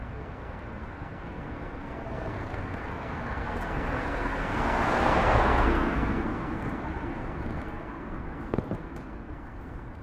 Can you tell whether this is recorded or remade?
remade